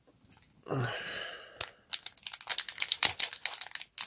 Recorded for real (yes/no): yes